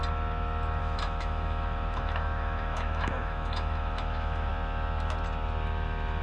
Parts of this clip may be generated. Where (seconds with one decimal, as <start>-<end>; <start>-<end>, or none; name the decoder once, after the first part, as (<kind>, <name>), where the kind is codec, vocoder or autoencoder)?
0.8-4.5 (autoencoder, DAC-VAE)